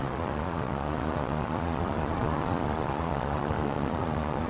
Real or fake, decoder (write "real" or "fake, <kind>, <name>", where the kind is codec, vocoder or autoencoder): fake, vocoder, Vocos